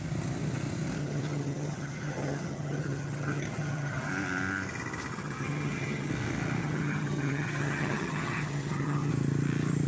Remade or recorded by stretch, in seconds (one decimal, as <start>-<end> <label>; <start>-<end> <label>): 0.0-1.0 recorded; 1.0-4.1 remade; 4.1-5.1 recorded; 5.1-6.1 remade; 6.1-6.6 recorded; 6.6-9.1 remade; 9.1-9.9 recorded

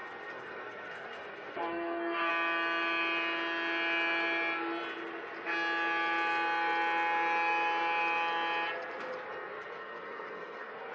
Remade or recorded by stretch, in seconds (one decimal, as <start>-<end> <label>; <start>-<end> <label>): 0.0-2.3 remade; 2.3-9.3 recorded; 9.3-10.9 remade

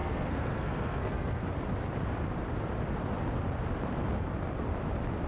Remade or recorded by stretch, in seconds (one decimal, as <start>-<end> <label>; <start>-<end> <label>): 0.0-1.4 remade; 1.4-5.3 recorded

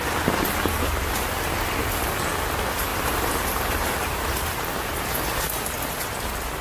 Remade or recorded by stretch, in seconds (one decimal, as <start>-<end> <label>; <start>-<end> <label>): 0.0-2.9 recorded; 2.9-4.3 remade; 4.3-6.6 recorded

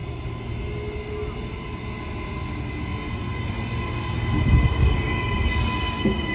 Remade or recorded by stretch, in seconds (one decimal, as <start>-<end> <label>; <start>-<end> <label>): 0.0-6.3 recorded

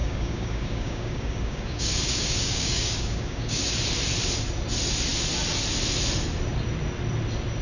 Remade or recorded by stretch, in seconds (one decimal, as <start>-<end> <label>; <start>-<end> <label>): 0.0-3.7 remade; 3.7-7.6 recorded

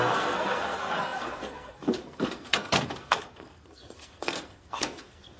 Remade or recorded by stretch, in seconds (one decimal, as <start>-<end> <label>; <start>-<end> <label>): 0.0-5.4 remade

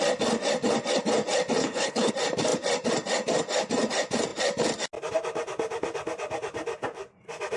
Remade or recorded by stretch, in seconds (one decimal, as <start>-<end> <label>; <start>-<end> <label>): 0.0-1.6 recorded; 1.6-2.1 remade; 2.1-7.6 recorded